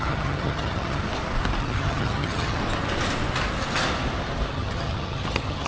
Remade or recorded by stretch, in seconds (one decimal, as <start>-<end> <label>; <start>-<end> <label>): 0.0-1.0 remade; 1.0-1.6 recorded; 1.6-2.6 remade; 2.6-4.5 recorded; 4.5-5.7 remade